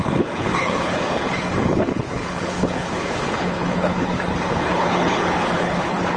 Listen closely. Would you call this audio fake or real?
fake